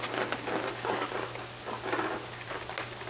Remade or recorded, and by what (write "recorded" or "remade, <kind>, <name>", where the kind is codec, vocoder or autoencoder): recorded